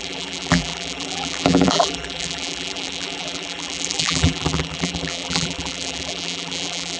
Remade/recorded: remade